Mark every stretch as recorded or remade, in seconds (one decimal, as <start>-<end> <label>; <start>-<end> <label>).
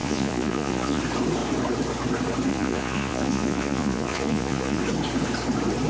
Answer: 0.0-1.0 remade; 1.0-2.5 recorded; 2.5-4.8 remade; 4.8-5.9 recorded